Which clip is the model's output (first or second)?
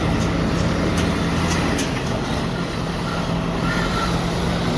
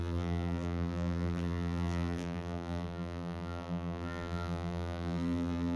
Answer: second